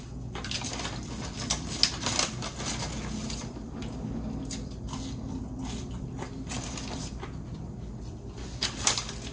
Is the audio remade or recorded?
recorded